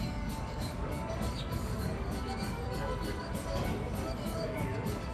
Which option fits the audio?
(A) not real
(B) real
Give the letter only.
A